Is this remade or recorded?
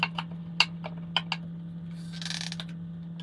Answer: recorded